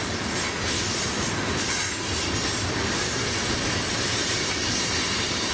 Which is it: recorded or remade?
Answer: recorded